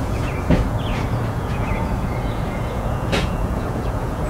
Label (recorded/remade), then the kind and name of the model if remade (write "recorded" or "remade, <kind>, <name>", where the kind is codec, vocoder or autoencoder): remade, vocoder, Vocos